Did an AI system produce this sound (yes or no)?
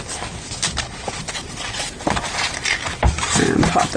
no